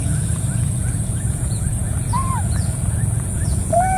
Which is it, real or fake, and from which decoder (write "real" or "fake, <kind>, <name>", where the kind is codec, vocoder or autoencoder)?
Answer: fake, vocoder, Vocos